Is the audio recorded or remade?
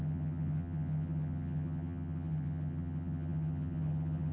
remade